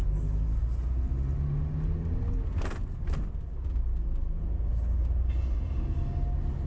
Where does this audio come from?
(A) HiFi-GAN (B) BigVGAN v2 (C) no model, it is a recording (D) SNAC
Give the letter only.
C